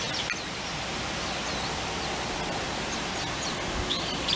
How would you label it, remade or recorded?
recorded